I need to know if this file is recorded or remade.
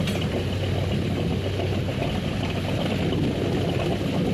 recorded